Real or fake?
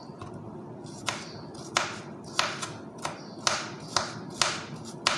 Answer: real